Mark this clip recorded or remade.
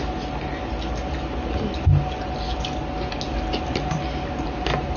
recorded